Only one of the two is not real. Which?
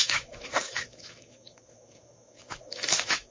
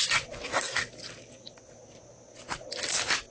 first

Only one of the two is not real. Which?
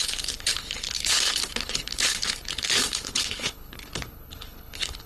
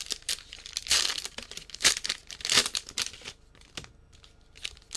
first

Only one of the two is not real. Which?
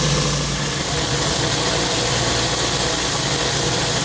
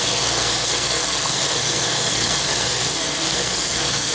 second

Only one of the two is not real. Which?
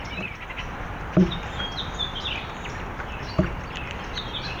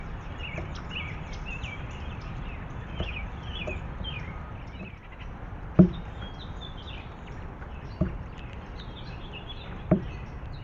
second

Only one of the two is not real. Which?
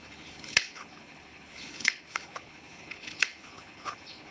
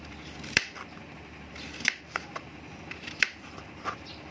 first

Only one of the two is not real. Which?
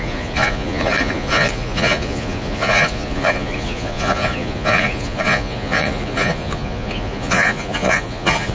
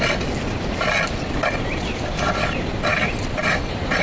first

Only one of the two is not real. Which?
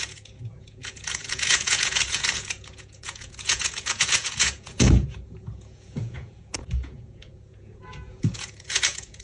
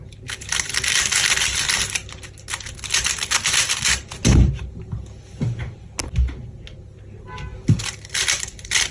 first